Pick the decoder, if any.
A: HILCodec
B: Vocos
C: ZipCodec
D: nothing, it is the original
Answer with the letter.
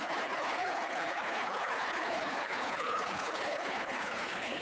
A